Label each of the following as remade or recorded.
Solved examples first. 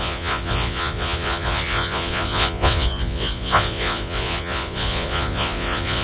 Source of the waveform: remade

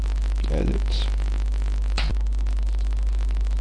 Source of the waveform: recorded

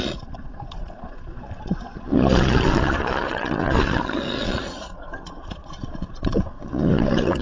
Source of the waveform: remade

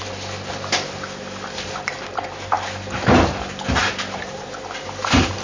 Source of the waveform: recorded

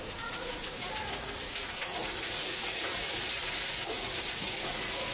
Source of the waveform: remade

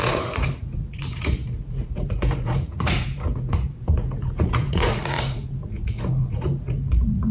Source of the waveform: remade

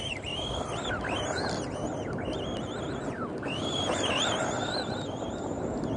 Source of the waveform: recorded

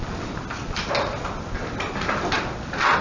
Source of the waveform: recorded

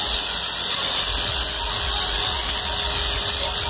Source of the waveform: recorded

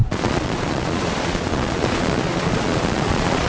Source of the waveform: remade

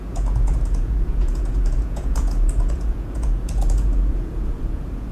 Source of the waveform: remade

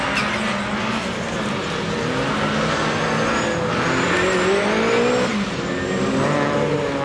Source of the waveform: recorded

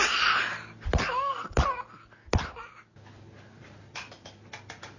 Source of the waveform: recorded